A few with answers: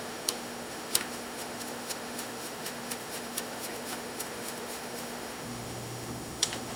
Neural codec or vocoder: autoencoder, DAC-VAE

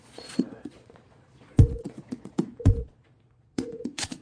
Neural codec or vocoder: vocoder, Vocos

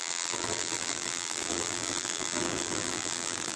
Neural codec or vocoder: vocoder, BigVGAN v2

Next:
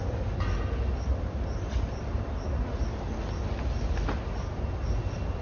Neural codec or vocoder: none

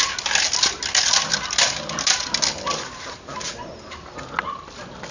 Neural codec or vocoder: none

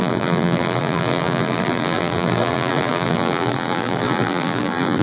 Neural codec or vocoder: vocoder, BigVGAN v2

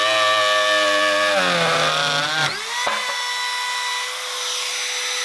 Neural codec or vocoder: none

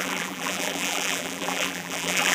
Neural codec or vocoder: vocoder, BigVGAN v2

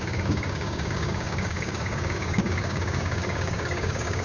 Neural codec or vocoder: codec, DAC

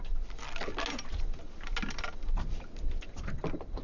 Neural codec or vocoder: none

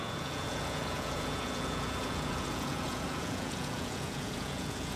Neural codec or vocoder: vocoder, Vocos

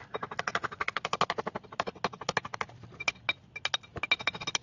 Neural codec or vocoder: none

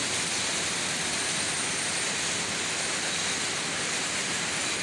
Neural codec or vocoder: none